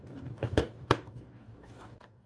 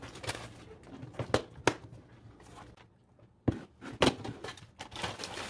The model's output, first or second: first